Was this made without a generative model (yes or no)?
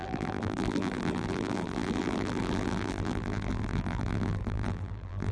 no